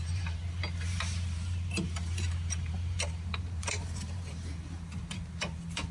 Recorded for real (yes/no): no